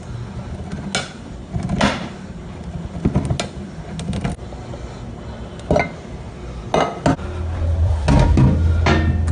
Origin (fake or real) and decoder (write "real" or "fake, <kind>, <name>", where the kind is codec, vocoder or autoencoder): real